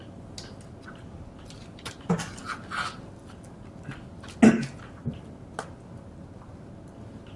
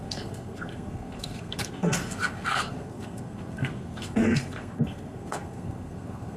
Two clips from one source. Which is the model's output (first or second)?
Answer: second